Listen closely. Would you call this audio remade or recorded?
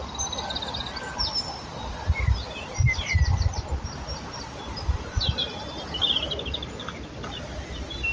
recorded